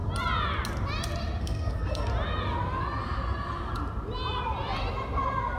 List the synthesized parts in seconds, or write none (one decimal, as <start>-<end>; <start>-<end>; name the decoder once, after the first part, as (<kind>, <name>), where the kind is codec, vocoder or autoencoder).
1.4-2.1 (codec, SNAC)